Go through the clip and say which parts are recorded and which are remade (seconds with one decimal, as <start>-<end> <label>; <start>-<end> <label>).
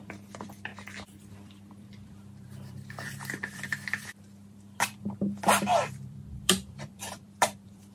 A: 0.0-0.7 remade; 0.7-1.3 recorded; 1.3-7.9 remade